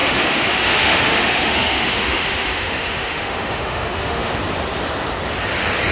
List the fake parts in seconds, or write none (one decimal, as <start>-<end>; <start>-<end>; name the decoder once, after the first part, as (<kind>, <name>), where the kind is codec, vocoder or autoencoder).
0.0-4.3 (autoencoder, DAC-VAE)